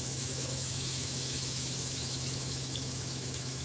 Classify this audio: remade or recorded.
remade